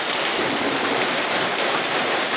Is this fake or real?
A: fake